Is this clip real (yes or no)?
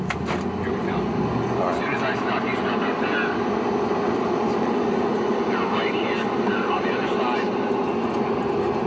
yes